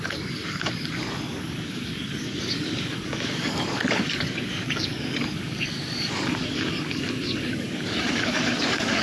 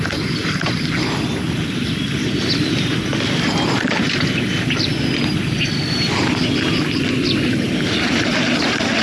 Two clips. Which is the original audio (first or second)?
second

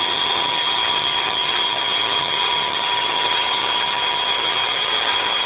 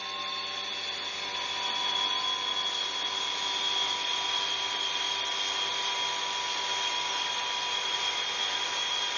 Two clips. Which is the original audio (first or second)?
second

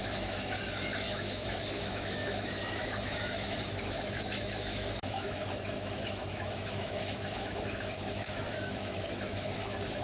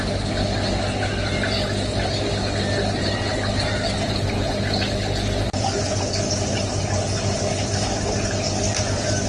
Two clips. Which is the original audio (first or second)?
second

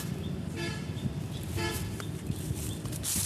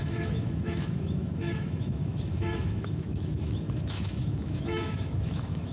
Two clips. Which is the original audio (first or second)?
first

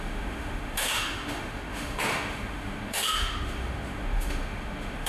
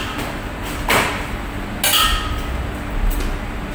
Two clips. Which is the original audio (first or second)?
second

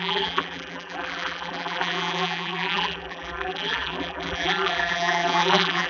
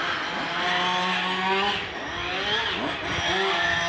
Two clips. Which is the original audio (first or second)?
second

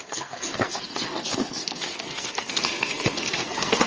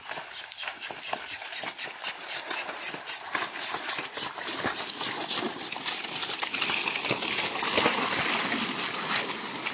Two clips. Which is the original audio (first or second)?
second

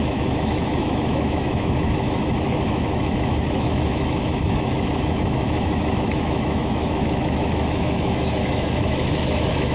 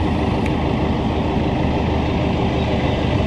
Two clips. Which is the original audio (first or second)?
second